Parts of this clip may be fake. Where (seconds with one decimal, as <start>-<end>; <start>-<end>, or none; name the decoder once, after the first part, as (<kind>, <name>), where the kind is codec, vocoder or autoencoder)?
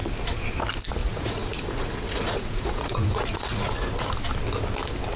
1.0-4.1 (vocoder, Vocos)